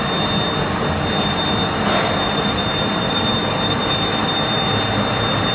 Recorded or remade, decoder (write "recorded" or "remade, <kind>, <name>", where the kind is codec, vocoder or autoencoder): recorded